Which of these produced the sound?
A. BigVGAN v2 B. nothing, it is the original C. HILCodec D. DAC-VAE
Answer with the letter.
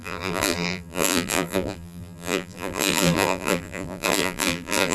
A